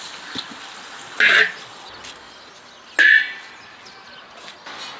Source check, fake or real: real